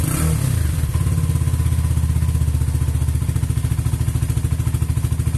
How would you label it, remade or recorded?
recorded